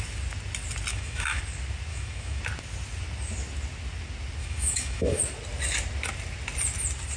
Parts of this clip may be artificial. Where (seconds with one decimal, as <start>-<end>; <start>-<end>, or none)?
0.9-1.4; 1.9-2.4; 4.4-5.2